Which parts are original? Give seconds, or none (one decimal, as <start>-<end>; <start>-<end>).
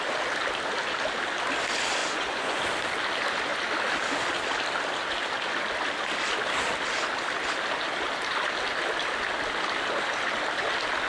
0.0-2.0; 2.6-11.1